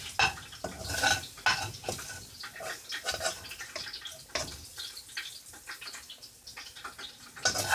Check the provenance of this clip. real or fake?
real